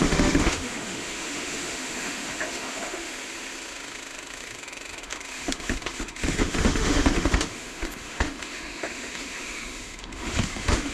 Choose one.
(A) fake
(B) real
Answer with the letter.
A